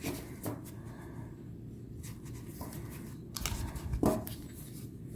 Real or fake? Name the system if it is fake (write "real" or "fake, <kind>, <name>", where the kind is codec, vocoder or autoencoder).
real